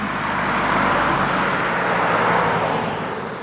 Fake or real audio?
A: real